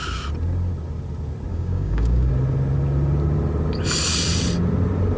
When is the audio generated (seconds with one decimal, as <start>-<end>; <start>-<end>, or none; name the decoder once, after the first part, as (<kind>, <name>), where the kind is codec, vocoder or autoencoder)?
1.5-2.3 (codec, DAC)